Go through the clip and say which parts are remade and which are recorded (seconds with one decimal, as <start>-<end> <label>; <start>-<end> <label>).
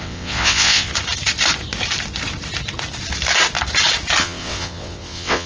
0.0-0.9 remade; 0.9-4.2 recorded; 4.2-5.5 remade